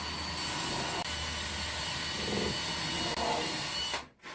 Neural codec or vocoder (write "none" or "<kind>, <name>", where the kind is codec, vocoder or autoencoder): none